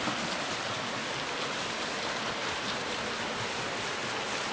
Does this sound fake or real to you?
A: real